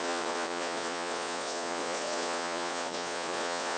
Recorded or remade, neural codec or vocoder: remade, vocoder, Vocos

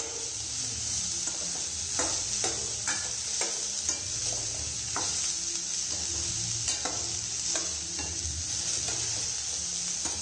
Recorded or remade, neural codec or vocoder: recorded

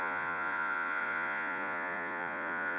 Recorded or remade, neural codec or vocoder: remade, vocoder, Vocos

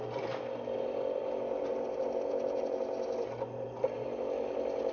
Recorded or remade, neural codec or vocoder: recorded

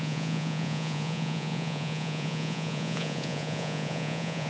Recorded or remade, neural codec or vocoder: remade, vocoder, Vocos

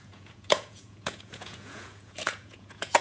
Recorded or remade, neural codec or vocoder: remade, vocoder, Vocos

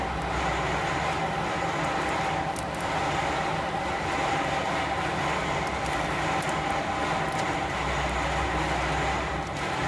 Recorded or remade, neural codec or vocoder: recorded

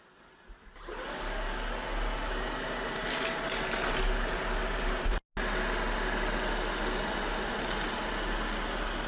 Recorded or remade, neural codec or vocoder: recorded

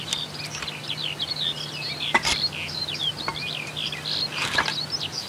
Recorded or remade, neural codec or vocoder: recorded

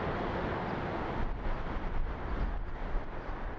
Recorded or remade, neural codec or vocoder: recorded